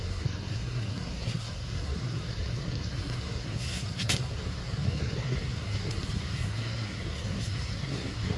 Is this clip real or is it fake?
fake